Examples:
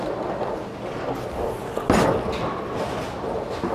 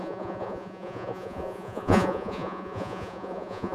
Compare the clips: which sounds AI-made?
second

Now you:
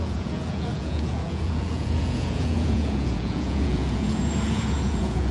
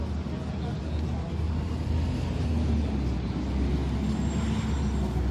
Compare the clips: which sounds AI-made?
first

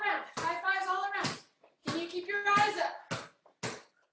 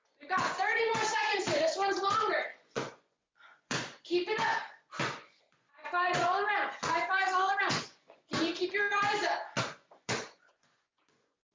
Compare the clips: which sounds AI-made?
second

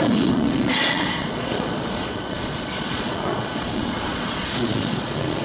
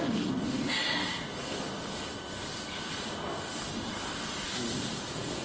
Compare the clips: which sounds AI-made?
first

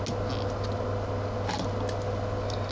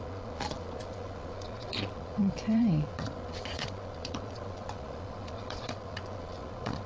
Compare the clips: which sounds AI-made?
second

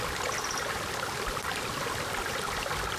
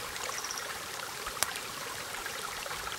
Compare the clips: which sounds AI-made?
second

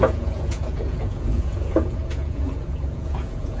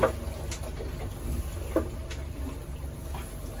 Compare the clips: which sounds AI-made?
first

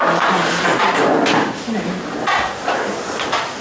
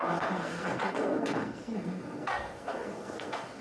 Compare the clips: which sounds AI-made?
second